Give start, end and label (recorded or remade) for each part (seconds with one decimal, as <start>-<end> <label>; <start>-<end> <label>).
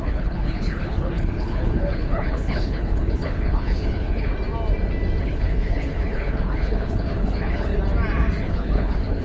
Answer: 0.0-4.3 remade; 4.3-5.2 recorded; 5.2-7.7 remade; 7.7-8.4 recorded; 8.4-9.2 remade